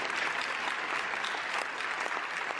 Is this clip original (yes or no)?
yes